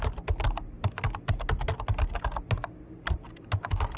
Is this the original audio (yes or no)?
yes